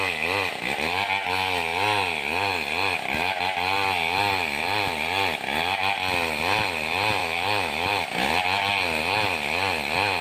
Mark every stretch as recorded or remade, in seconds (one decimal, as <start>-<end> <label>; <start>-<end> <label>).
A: 0.0-7.2 recorded; 7.2-8.3 remade; 8.3-10.2 recorded